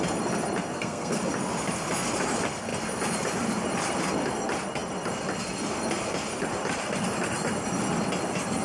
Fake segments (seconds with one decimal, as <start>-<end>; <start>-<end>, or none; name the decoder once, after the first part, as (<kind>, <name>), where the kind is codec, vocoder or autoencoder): 0.7-1.2 (codec, SNAC)

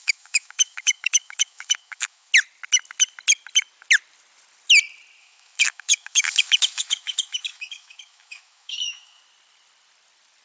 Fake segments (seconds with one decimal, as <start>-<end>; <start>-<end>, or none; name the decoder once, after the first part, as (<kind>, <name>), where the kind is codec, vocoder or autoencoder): 0.0-2.3 (autoencoder, DAC-VAE); 5.2-9.2

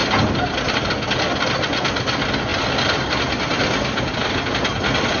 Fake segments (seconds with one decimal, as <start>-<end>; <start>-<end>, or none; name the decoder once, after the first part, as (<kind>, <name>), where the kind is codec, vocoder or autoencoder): 2.5-3.2 (vocoder, BigVGAN v2); 4.2-5.2

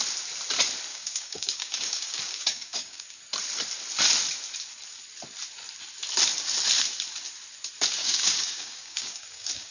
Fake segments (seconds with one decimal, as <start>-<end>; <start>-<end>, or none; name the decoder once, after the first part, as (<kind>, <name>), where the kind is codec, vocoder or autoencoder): 0.9-3.2 (codec, DAC); 8.0-9.7

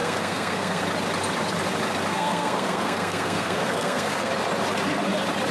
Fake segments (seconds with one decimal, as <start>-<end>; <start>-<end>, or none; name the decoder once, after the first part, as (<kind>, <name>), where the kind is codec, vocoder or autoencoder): 0.0-0.8 (codec, SNAC); 2.1-4.3

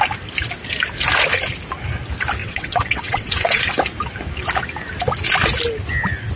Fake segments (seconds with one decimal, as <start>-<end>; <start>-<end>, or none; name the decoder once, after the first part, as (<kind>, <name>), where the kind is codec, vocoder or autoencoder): 2.4-3.7 (vocoder, WaveNeXt)